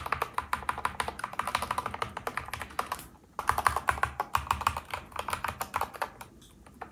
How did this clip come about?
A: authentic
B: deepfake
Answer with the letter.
A